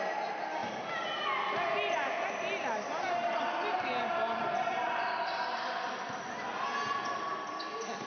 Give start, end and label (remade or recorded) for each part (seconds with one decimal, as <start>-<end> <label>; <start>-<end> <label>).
0.0-8.1 recorded